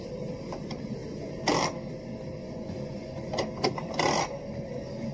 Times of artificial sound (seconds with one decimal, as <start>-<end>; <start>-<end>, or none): 2.4-3.3